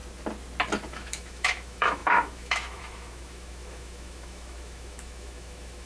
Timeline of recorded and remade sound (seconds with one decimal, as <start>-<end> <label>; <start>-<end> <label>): 0.0-0.9 recorded; 0.9-5.9 remade